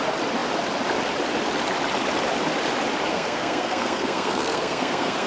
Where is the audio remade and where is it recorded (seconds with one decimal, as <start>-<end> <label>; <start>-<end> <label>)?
0.0-3.1 recorded; 3.1-5.3 remade